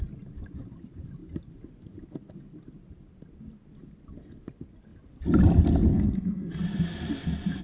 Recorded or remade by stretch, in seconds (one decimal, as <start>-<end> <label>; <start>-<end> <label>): 0.0-5.9 recorded; 5.9-6.5 remade; 6.5-7.6 recorded